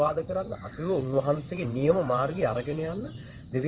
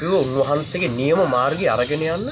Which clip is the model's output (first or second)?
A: first